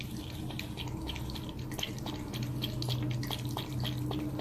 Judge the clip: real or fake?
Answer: real